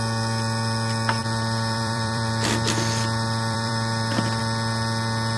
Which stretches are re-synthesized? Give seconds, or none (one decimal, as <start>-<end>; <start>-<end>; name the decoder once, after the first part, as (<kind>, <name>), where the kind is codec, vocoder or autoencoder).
1.2-4.4 (vocoder, BigVGAN v2)